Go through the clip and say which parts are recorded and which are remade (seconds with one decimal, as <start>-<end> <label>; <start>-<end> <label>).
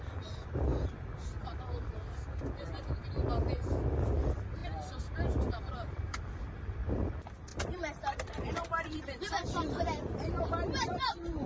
0.0-0.7 remade; 0.7-3.5 recorded; 3.5-4.6 remade; 4.6-5.6 recorded; 5.6-11.5 remade